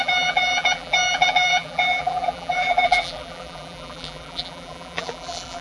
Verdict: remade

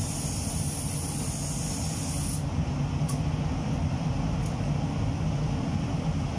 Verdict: recorded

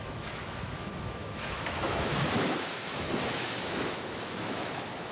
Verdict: remade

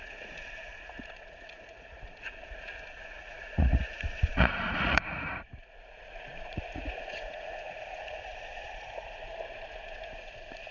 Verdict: remade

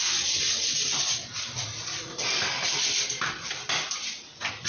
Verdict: remade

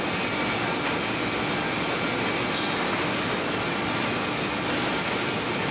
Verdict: recorded